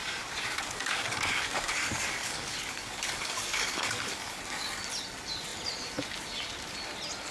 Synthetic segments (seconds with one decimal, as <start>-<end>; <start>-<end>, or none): 0.0-4.4